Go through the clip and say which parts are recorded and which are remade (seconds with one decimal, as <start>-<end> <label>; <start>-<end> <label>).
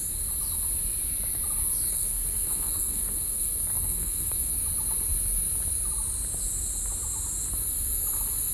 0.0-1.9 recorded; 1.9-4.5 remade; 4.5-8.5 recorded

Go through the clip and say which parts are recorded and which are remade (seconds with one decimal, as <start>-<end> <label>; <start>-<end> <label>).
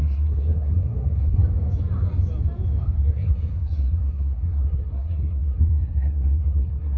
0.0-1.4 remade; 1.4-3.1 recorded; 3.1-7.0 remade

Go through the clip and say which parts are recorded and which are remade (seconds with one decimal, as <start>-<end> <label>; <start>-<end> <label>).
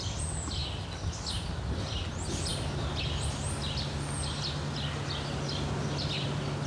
0.0-6.7 recorded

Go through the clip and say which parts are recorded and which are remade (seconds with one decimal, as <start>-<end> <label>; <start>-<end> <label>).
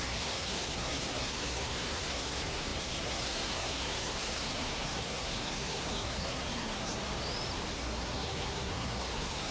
0.0-7.0 remade; 7.0-7.7 recorded; 7.7-9.5 remade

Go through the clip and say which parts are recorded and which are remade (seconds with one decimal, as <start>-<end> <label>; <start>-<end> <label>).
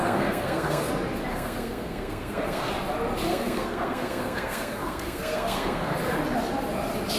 0.0-0.9 remade; 0.9-1.3 recorded; 1.3-2.7 remade; 2.7-3.3 recorded; 3.3-5.9 remade; 5.9-7.2 recorded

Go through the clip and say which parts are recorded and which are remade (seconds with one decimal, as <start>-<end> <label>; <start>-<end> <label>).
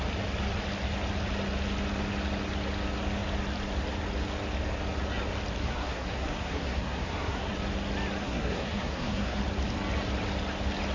0.0-5.6 recorded; 5.6-7.5 remade; 7.5-8.2 recorded; 8.2-9.4 remade; 9.4-10.9 recorded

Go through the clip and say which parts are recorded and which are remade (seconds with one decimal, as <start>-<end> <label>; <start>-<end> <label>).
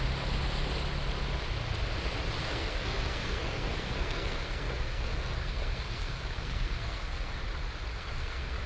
0.0-2.4 recorded; 2.4-7.4 remade; 7.4-7.9 recorded; 7.9-8.7 remade